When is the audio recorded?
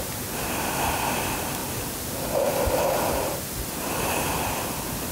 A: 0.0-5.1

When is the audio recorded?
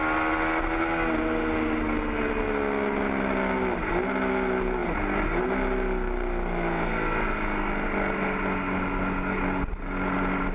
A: 0.0-10.5